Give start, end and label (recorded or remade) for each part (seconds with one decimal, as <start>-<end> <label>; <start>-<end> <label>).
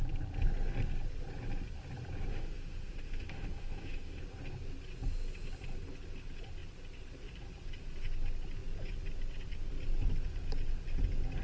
0.0-2.3 recorded; 2.3-4.2 remade; 4.2-11.4 recorded